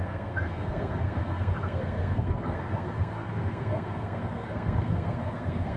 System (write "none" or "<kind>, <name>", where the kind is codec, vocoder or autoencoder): codec, SNAC